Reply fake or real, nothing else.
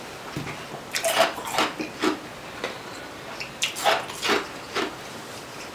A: real